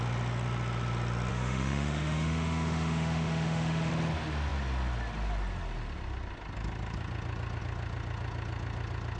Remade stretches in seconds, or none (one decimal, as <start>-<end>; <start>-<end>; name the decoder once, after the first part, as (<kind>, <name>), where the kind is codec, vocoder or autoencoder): 1.3-3.9 (autoencoder, DAC-VAE)